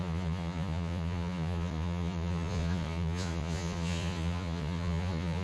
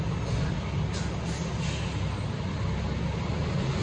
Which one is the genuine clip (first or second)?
second